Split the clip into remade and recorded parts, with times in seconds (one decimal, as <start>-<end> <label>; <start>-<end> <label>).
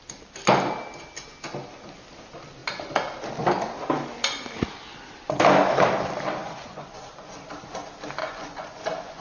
0.0-6.4 recorded; 6.4-7.4 remade; 7.4-8.2 recorded; 8.2-9.2 remade